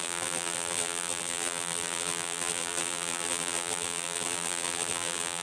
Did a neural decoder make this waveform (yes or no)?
yes